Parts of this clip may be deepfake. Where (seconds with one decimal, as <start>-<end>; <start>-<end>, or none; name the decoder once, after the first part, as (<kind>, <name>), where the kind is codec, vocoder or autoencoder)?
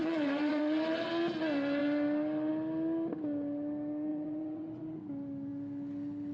0.0-1.1 (vocoder, WaveNeXt); 4.1-5.0